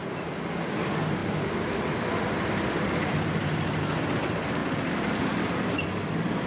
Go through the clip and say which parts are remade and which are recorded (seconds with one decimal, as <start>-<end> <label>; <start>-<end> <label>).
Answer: 0.0-6.5 recorded